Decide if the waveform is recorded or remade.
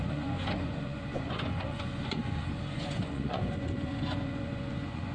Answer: remade